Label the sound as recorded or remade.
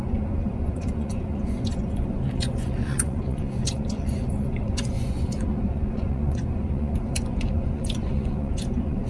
remade